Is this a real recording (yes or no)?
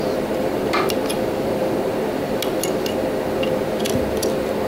yes